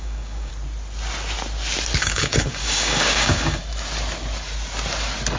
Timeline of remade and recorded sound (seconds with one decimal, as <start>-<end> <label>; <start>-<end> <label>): 0.0-0.5 remade; 0.5-2.0 recorded; 2.0-3.6 remade; 3.6-5.4 recorded